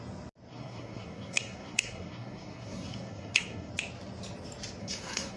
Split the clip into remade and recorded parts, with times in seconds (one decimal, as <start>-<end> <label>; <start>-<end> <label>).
0.0-0.5 recorded; 0.5-3.7 remade; 3.7-4.8 recorded; 4.8-5.4 remade